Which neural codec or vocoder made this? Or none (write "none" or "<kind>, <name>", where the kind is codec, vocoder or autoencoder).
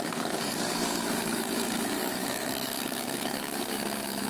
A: codec, DAC